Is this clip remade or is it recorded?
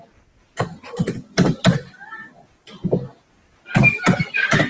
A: recorded